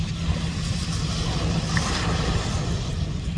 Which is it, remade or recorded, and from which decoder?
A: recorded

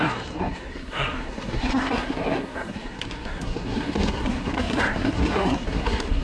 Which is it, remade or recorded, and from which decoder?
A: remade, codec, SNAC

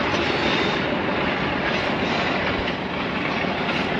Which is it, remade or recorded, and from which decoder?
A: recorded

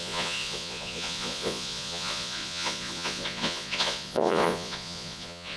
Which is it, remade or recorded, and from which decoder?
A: remade, vocoder, Vocos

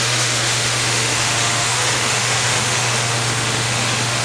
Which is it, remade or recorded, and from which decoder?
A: remade, autoencoder, DAC-VAE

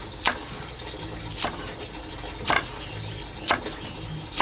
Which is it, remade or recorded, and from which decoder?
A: recorded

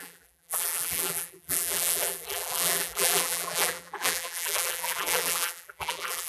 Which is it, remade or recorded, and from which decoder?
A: remade, vocoder, BigVGAN v2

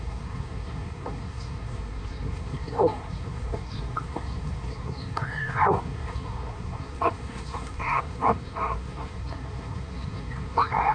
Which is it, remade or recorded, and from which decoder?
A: remade, codec, SNAC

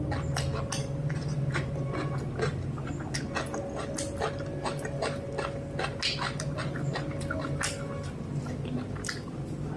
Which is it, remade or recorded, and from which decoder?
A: recorded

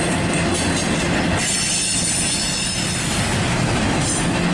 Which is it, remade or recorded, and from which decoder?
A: recorded